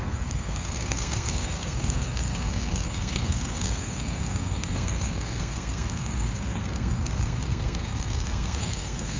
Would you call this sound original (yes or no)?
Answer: no